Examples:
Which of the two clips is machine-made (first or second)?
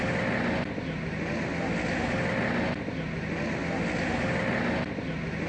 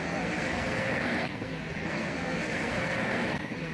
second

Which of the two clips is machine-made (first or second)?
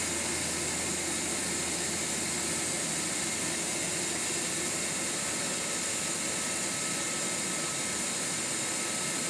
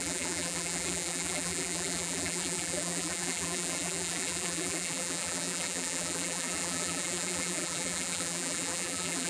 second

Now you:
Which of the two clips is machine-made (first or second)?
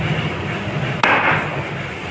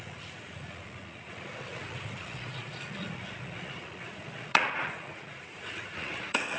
second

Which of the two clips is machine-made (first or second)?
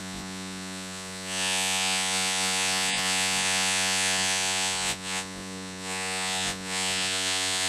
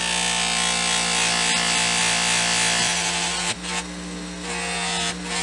first